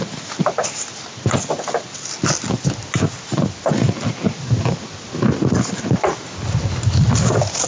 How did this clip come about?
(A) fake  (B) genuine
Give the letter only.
B